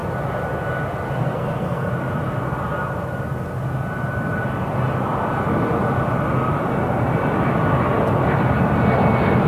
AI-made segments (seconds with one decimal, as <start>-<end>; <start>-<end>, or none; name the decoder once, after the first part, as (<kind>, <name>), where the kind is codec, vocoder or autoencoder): 1.2-1.9 (codec, SNAC)